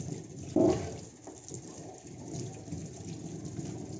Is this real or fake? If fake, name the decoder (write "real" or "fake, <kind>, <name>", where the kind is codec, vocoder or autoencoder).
real